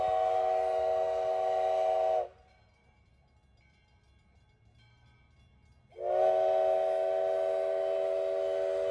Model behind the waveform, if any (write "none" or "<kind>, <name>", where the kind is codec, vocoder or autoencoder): none